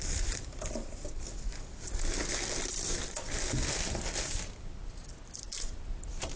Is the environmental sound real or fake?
real